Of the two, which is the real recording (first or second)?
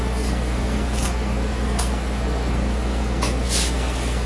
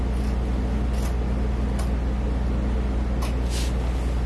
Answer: second